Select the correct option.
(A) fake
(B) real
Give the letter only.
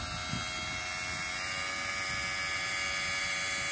B